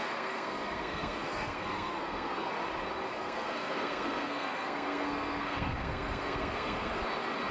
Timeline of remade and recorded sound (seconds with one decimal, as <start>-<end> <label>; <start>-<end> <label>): 0.0-2.5 remade; 2.5-3.1 recorded; 3.1-6.9 remade; 6.9-7.5 recorded